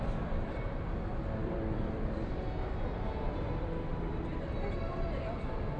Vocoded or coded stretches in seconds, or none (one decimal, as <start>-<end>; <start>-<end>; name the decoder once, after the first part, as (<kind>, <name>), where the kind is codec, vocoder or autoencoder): 1.4-2.3 (vocoder, BigVGAN v2); 3.9-4.8